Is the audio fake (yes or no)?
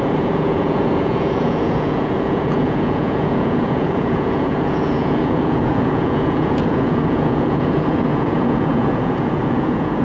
yes